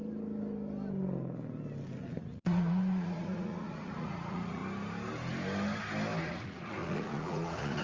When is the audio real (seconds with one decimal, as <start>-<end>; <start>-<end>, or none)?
0.0-2.2; 4.6-6.2